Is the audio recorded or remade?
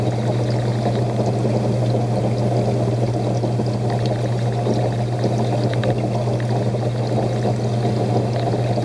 recorded